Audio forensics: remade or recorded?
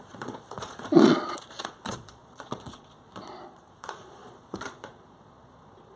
remade